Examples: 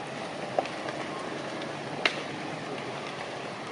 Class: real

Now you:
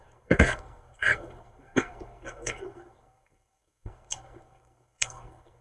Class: fake